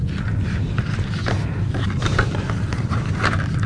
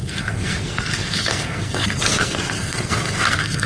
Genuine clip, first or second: first